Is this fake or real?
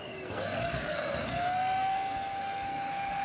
fake